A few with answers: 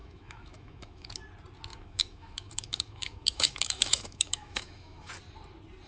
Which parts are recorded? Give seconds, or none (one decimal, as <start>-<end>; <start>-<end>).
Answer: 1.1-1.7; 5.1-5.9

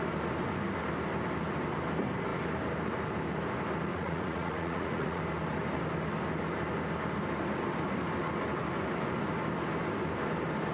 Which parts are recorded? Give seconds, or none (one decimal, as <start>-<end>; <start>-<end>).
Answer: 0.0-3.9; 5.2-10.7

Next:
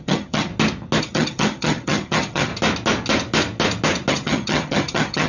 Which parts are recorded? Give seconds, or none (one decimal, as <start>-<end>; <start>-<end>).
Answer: 0.5-1.0; 2.5-4.1

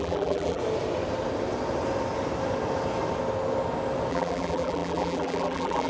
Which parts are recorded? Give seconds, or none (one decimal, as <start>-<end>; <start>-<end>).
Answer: 0.6-4.1

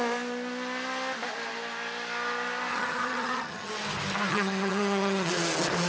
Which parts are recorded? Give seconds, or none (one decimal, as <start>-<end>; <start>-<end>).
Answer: 0.0-2.7; 3.7-4.3; 5.3-5.9

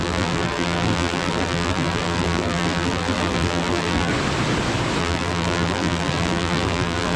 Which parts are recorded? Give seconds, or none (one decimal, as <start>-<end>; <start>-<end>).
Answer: 4.1-5.0

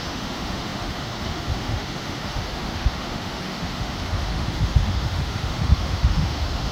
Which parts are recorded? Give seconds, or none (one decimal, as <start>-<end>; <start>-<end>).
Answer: none